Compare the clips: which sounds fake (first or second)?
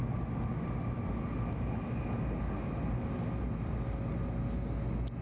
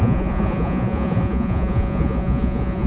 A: second